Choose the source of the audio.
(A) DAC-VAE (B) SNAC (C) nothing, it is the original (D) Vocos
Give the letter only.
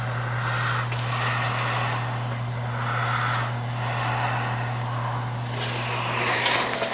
C